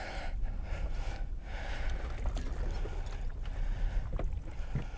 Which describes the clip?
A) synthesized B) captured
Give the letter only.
B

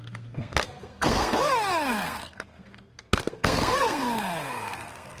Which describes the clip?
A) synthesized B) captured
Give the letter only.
A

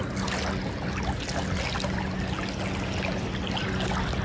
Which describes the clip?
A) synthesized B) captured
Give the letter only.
B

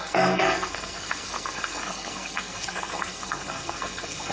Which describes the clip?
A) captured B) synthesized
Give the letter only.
B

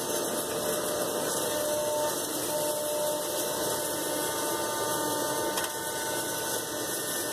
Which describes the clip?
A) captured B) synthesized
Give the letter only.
A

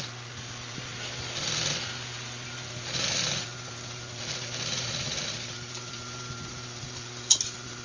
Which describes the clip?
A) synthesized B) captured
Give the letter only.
B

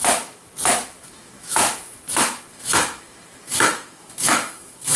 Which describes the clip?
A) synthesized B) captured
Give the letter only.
A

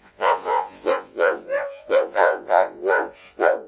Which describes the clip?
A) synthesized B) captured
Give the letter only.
A